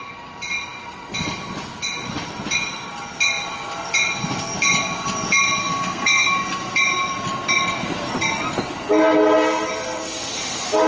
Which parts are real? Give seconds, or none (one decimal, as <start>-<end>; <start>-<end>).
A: 0.0-5.6; 6.3-10.9